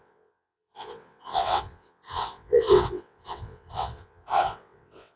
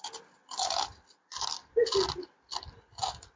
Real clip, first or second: second